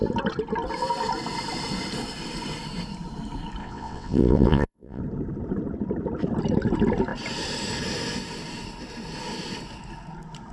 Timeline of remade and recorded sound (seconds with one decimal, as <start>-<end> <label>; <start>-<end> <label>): 0.0-3.6 recorded; 3.6-5.0 remade; 5.0-10.5 recorded